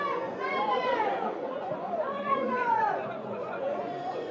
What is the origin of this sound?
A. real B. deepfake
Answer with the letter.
B